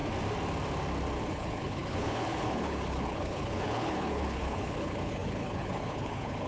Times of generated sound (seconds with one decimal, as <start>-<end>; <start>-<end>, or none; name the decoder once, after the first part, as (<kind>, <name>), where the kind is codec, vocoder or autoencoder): 1.3-6.5 (codec, HILCodec)